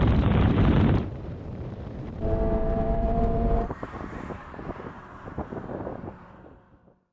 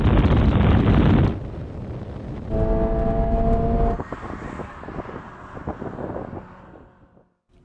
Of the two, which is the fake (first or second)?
first